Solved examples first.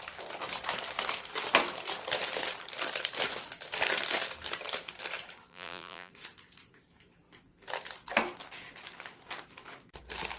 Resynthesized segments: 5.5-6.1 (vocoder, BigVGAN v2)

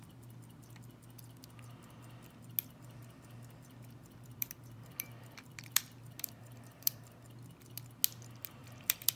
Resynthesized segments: 4.0-7.2 (vocoder, BigVGAN v2); 8.6-9.2

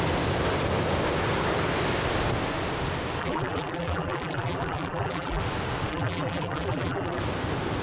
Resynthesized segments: 3.2-5.4 (vocoder, BigVGAN v2); 5.9-7.2